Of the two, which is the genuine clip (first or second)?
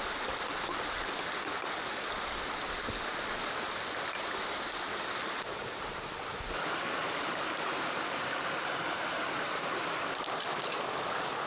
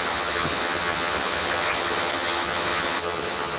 first